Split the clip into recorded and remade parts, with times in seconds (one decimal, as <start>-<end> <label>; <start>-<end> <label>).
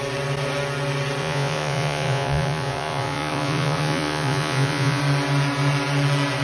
0.0-1.2 recorded; 1.2-5.0 remade; 5.0-6.4 recorded